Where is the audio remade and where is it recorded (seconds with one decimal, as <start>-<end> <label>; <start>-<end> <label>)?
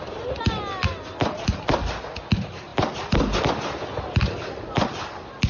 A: 0.0-5.5 recorded